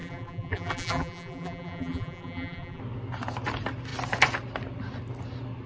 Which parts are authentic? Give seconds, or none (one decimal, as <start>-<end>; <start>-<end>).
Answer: 2.8-5.7